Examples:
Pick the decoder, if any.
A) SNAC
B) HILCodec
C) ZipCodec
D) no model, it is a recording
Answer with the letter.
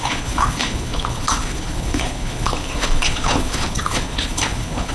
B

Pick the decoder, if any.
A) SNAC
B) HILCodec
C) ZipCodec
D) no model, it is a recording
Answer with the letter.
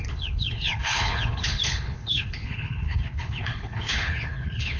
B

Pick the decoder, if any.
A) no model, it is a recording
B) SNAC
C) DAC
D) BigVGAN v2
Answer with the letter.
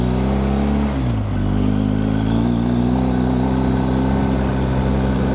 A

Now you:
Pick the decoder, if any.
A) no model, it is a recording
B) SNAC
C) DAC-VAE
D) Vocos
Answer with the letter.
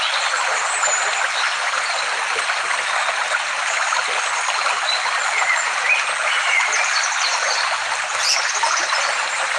A